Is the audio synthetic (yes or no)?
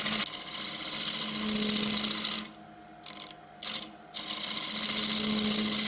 no